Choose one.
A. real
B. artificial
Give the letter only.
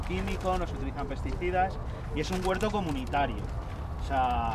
A